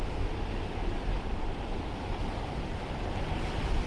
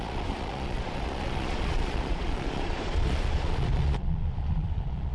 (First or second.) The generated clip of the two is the second